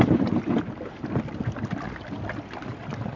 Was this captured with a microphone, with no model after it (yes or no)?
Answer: yes